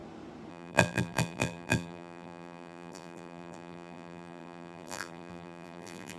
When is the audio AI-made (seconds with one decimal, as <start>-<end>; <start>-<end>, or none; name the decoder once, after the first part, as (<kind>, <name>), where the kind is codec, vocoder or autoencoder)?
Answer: 0.5-6.2 (vocoder, BigVGAN v2)